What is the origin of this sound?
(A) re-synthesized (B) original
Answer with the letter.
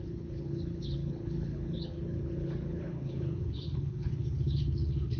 A